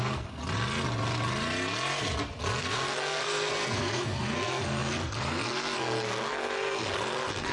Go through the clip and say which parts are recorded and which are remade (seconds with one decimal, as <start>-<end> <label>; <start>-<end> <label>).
0.0-0.4 remade; 0.4-2.6 recorded; 2.6-7.5 remade